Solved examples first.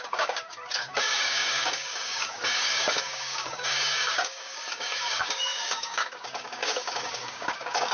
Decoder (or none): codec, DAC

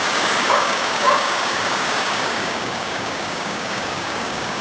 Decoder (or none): codec, DAC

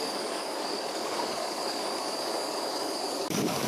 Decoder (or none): codec, DAC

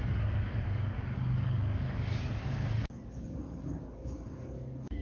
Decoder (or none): codec, DAC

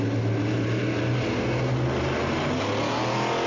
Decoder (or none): none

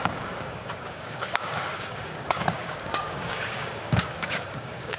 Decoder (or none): codec, DAC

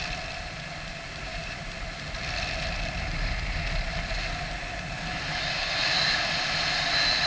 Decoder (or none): none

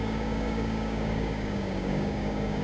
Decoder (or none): codec, DAC